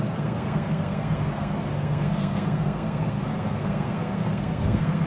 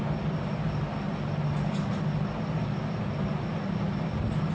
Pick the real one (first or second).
second